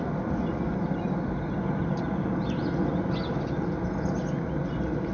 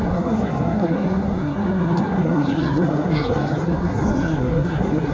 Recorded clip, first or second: first